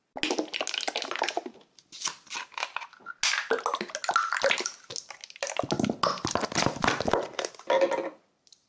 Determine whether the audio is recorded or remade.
recorded